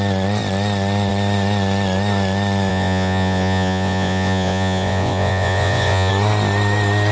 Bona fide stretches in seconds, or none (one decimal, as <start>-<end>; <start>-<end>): 0.0-2.7; 6.1-7.1